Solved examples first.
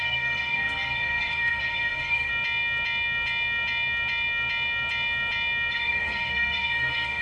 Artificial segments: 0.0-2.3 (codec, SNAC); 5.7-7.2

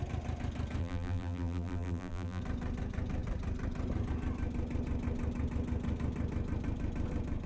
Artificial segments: 0.8-2.4 (vocoder, BigVGAN v2)